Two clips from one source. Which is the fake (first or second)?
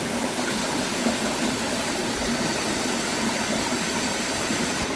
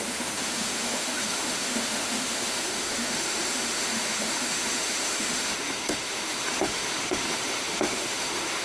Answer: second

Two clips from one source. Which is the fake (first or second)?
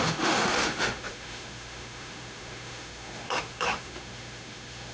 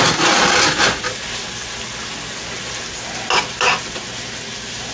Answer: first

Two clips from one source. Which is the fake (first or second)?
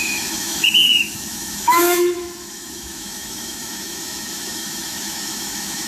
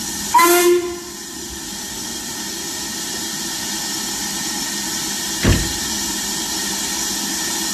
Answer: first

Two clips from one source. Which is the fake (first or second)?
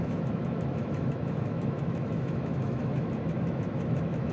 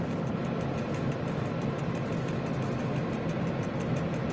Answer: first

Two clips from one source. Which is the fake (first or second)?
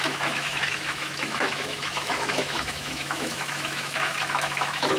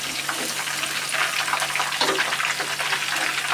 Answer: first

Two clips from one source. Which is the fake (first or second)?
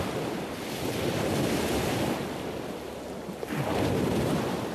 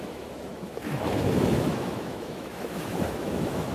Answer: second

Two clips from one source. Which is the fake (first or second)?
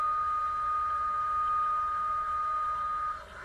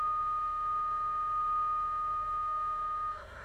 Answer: second